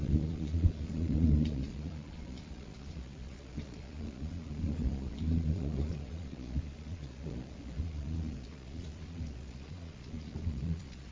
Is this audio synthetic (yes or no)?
yes